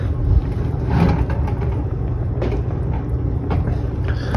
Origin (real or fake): real